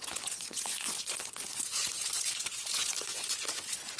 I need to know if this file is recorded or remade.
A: remade